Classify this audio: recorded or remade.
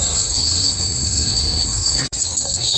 remade